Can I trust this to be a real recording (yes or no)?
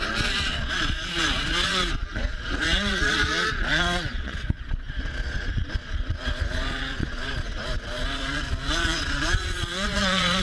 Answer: no